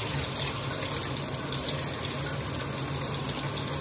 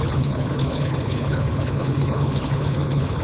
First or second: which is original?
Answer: first